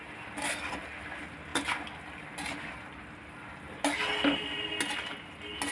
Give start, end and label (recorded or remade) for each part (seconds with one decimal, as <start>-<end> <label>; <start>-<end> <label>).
0.0-5.7 recorded